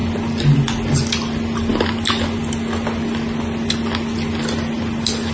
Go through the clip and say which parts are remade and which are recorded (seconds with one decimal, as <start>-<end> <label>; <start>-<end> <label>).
0.0-5.3 recorded

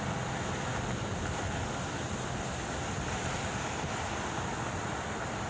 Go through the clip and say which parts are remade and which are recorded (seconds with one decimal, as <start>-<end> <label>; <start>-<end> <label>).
0.0-5.5 recorded

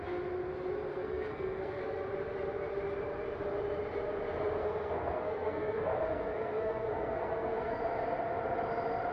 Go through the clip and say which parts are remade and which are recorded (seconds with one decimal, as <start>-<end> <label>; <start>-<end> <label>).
0.0-0.9 recorded; 0.9-1.8 remade; 1.8-4.6 recorded; 4.6-7.8 remade; 7.8-9.1 recorded

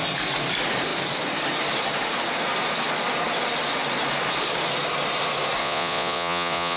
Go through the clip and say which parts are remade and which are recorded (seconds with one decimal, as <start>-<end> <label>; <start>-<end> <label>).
0.0-5.6 recorded; 5.6-6.8 remade

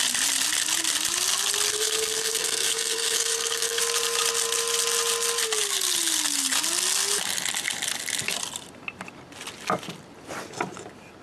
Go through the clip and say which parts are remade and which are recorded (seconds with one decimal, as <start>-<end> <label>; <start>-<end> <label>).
0.0-1.7 recorded; 1.7-3.8 remade; 3.8-11.2 recorded

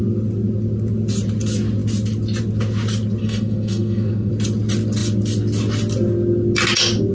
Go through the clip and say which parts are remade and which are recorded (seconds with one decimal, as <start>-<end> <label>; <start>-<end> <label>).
0.0-3.2 recorded; 3.2-4.3 remade; 4.3-7.1 recorded